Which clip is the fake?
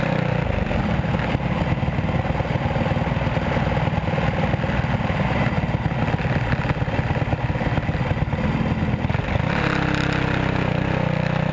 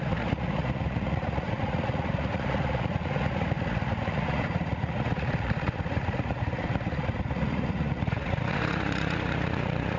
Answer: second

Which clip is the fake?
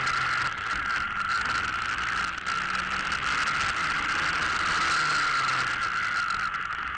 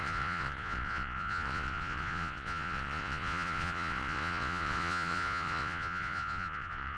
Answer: second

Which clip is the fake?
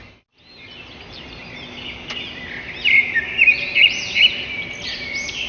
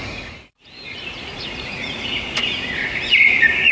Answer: second